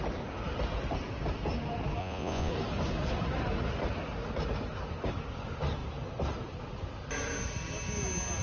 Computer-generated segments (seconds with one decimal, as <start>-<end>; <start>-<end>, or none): 2.0-2.5